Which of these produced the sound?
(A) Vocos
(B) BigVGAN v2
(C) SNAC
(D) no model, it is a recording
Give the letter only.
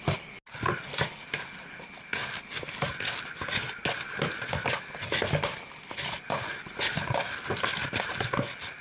D